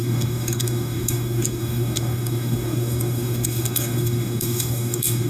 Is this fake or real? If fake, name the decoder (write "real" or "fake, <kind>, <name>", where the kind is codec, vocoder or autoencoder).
fake, codec, DAC